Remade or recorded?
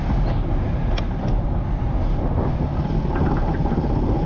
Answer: recorded